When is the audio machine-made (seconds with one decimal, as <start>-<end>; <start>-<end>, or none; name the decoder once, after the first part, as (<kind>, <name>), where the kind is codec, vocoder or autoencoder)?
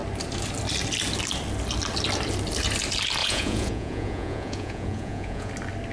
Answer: 3.2-5.5 (vocoder, Vocos)